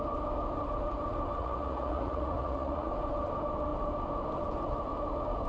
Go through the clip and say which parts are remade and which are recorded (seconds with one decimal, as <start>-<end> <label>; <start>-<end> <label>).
0.0-1.4 recorded; 1.4-2.9 remade; 2.9-5.5 recorded